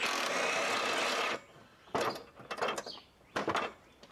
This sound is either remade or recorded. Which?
recorded